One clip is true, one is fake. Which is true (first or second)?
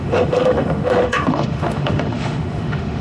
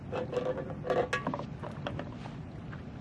second